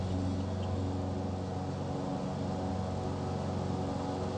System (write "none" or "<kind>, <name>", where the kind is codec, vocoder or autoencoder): none